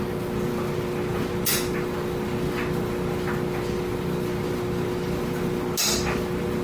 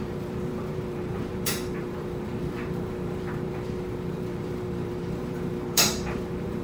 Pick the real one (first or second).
first